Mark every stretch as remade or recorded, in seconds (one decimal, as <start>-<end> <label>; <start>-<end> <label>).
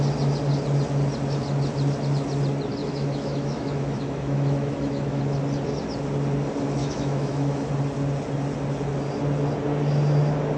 0.0-2.8 recorded; 2.8-5.2 remade; 5.2-6.8 recorded; 6.8-7.7 remade; 7.7-10.6 recorded